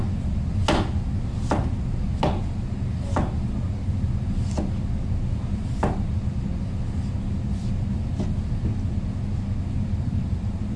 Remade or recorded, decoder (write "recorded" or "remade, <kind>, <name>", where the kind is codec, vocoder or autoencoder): recorded